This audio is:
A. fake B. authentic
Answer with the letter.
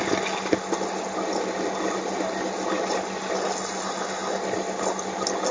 B